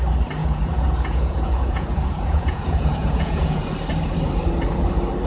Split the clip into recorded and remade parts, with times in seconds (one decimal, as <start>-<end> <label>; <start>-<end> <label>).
0.0-0.4 recorded; 0.4-3.6 remade; 3.6-5.3 recorded